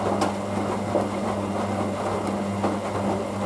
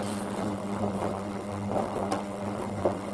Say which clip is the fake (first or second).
second